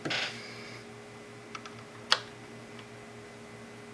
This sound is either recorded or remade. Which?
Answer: recorded